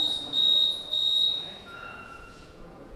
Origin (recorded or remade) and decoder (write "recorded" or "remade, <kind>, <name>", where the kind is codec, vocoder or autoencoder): remade, vocoder, Vocos